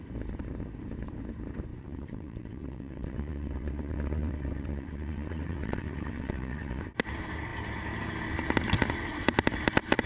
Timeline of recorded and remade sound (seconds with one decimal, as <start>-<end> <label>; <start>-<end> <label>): 0.0-1.7 recorded; 1.7-6.8 remade; 6.8-10.1 recorded